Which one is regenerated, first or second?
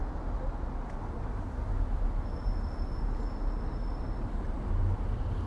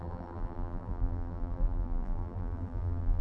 second